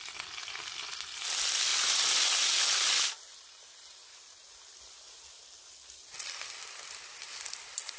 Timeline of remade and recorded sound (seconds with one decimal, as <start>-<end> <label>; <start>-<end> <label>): 0.0-8.0 recorded